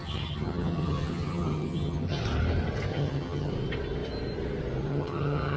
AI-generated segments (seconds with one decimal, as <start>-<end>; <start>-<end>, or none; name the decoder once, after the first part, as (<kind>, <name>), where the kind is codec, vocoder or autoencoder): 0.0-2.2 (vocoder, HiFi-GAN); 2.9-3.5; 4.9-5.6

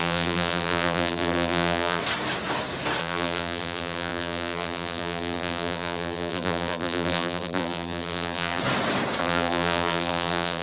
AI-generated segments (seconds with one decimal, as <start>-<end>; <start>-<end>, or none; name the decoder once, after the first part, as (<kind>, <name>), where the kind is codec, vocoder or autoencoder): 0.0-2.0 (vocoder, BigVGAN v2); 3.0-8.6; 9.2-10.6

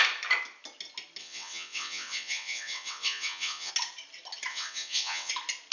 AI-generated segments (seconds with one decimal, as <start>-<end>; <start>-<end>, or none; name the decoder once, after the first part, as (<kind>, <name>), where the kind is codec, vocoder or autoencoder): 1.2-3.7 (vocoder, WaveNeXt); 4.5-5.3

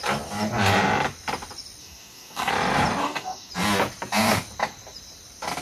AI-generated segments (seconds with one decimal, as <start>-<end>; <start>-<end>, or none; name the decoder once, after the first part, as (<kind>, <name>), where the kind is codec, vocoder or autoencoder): 1.8-2.5 (codec, DAC); 3.0-3.5

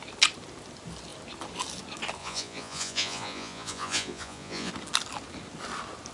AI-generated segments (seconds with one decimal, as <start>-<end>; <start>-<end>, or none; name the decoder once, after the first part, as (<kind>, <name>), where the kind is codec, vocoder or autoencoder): 2.2-4.7 (vocoder, Vocos)

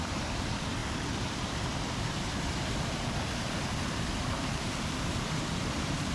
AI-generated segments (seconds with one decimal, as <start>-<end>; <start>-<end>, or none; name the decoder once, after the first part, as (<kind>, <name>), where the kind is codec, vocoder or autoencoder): 0.0-6.1 (vocoder, BigVGAN v2)

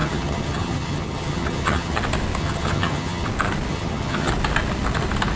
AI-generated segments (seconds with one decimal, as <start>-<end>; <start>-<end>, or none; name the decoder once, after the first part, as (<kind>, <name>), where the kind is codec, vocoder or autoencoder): 0.0-2.0 (vocoder, HiFi-GAN); 2.4-3.3; 3.7-4.3

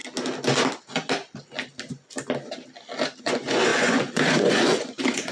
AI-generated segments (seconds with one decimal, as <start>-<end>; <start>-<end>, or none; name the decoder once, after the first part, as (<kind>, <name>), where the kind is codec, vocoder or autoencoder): 3.2-5.3 (vocoder, Vocos)